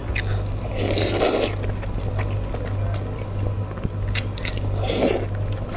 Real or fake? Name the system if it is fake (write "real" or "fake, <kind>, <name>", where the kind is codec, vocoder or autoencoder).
real